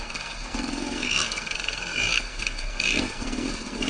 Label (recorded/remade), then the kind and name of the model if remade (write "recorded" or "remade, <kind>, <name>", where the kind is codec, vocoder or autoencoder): remade, codec, SNAC